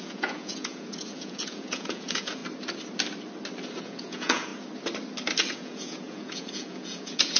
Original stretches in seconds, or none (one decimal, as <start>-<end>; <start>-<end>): 2.4-3.8; 4.5-5.5